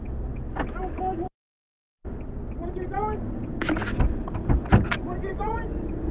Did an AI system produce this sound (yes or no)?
no